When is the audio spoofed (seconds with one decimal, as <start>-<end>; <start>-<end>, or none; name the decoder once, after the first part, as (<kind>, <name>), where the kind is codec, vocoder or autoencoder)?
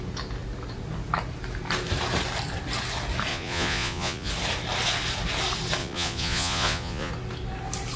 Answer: 3.3-4.3 (vocoder, Vocos); 5.8-7.1